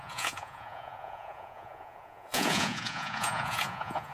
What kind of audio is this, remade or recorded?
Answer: remade